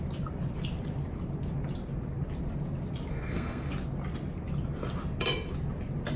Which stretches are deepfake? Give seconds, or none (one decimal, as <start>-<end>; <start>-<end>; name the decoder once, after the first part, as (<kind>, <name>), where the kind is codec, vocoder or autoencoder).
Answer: 3.1-3.7 (codec, SNAC)